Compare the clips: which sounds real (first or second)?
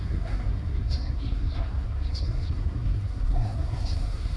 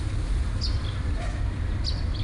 second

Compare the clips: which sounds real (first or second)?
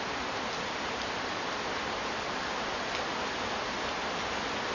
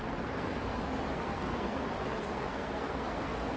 first